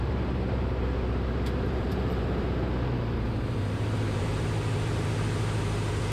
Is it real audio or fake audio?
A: fake